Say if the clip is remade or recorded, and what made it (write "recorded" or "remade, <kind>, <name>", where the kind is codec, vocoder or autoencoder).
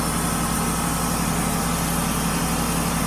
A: recorded